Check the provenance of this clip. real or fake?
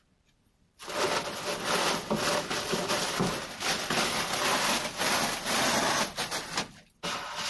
real